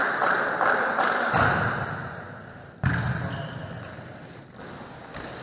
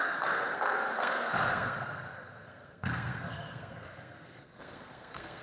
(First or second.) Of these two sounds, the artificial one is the second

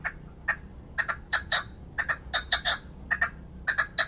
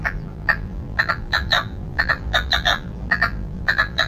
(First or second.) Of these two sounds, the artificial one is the second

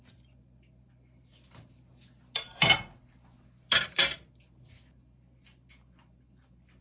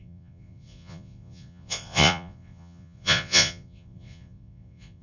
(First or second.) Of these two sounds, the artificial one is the second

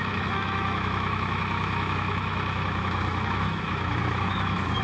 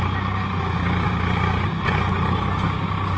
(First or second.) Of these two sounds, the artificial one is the first